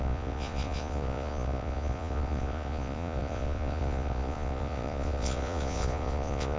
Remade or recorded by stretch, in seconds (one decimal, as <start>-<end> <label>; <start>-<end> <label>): 0.0-6.6 remade